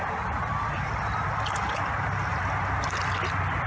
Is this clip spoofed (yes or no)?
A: no